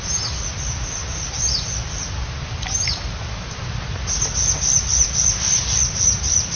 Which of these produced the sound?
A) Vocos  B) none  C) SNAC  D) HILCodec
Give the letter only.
B